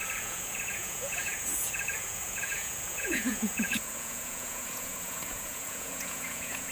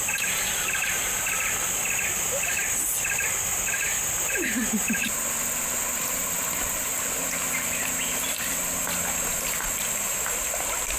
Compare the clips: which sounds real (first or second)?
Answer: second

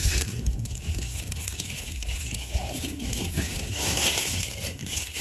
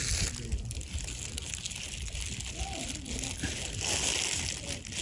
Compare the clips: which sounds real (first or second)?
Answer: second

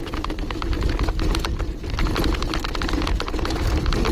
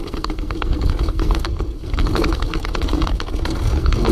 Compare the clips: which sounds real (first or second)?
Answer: first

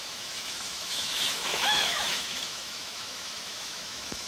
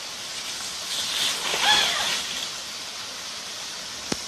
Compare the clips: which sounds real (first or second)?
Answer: second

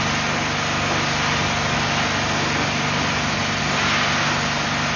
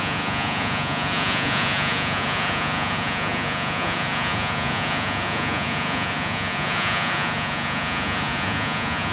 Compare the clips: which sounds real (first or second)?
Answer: first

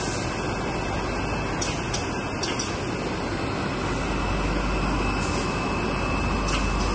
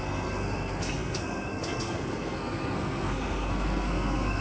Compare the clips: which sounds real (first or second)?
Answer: first